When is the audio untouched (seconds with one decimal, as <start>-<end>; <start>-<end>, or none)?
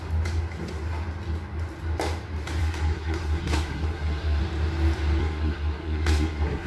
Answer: 0.0-2.6; 4.4-5.2